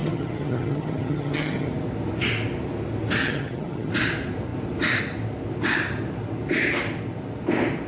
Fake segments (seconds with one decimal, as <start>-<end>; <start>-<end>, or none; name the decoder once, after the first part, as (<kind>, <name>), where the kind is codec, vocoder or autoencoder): 0.0-1.7 (vocoder, HiFi-GAN); 3.2-3.9